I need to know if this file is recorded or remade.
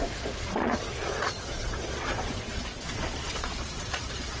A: remade